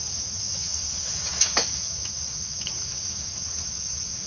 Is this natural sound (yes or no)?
no